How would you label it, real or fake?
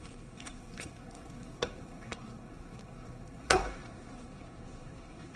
fake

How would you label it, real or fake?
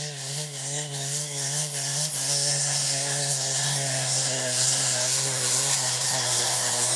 fake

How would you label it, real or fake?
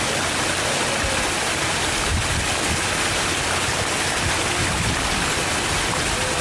real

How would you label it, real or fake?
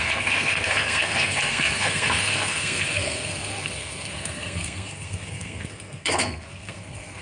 fake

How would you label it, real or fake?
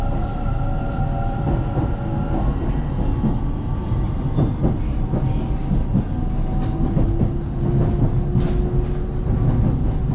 real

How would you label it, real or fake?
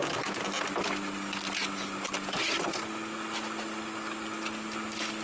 real